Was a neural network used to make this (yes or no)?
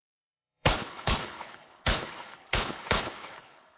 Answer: yes